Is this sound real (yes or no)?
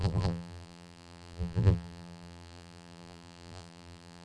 no